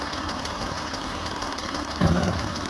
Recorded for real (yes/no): no